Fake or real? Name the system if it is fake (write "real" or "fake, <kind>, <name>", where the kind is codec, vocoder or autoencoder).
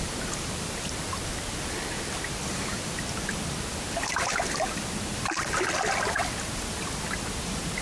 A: real